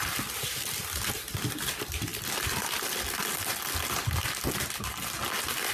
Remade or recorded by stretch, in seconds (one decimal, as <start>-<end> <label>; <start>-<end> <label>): 0.0-2.1 remade; 2.1-5.7 recorded